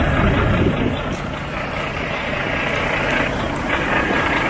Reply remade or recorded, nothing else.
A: recorded